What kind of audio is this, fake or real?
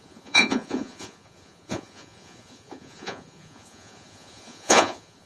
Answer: fake